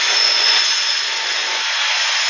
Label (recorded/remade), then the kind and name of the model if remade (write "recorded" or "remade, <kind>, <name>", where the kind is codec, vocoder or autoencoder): remade, vocoder, Vocos